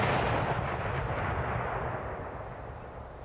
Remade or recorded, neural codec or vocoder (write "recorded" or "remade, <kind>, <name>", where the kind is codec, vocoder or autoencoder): recorded